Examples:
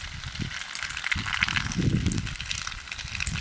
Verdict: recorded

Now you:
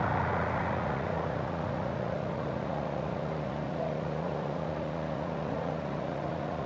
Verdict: remade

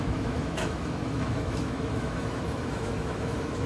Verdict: remade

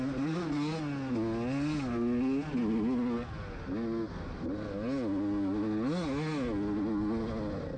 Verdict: recorded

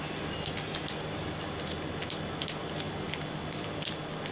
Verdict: recorded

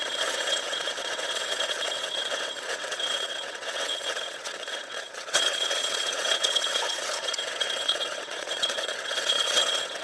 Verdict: remade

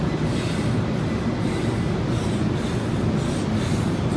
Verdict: recorded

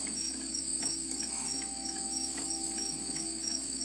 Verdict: remade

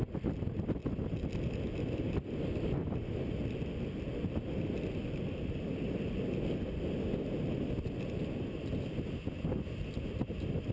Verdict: recorded